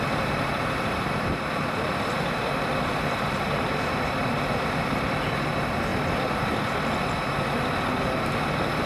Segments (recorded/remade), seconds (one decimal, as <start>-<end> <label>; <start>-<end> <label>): 0.0-8.9 recorded